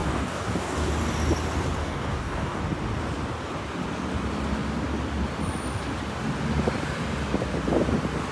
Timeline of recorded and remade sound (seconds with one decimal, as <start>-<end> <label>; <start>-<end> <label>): 0.0-0.9 remade; 0.9-1.8 recorded; 1.8-2.6 remade; 2.6-8.3 recorded